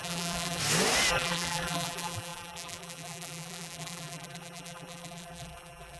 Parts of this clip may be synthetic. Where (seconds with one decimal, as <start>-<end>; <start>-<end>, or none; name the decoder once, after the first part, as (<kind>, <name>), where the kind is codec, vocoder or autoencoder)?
0.0-0.6 (vocoder, BigVGAN v2); 1.1-6.0